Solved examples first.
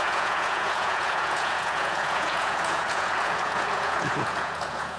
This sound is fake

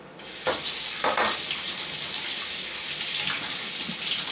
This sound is real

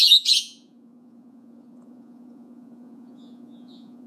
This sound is fake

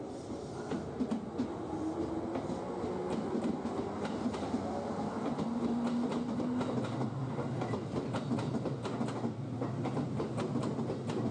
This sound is real